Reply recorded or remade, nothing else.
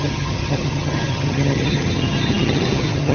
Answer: remade